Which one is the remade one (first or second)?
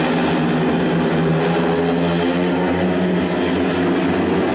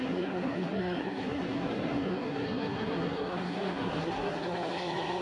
second